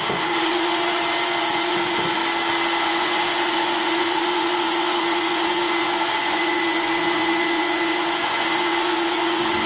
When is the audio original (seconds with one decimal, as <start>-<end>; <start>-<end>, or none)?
2.2-2.8